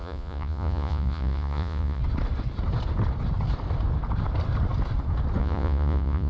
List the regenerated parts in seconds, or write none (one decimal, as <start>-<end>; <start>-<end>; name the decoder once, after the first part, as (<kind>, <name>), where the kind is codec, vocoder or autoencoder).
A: 0.0-2.0 (vocoder, Vocos); 5.4-6.3